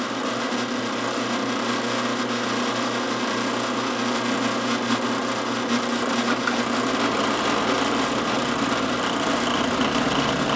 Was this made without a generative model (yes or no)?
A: yes